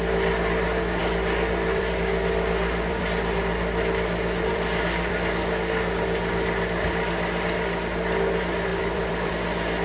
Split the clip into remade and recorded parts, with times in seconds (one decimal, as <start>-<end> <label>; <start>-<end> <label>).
0.0-1.0 recorded; 1.0-5.1 remade; 5.1-8.7 recorded; 8.7-9.3 remade; 9.3-9.8 recorded